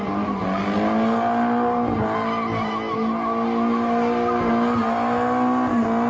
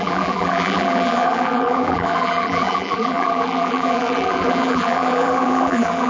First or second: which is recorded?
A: first